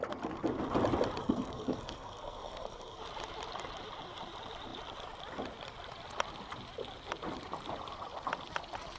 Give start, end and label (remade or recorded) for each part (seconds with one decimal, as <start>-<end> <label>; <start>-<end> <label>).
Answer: 0.0-1.2 recorded; 1.2-3.0 remade; 3.0-9.0 recorded